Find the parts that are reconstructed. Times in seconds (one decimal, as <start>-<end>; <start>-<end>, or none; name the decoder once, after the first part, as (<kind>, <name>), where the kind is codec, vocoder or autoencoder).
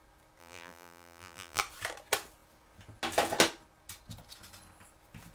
0.4-1.6 (vocoder, BigVGAN v2)